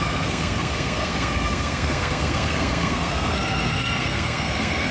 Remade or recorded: remade